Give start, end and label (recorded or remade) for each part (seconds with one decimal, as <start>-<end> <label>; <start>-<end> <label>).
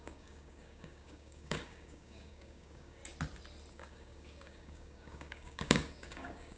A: 0.0-3.0 remade; 3.0-3.7 recorded; 3.7-6.6 remade